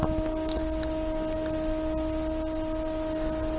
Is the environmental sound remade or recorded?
recorded